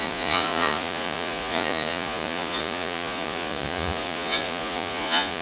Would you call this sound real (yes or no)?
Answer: no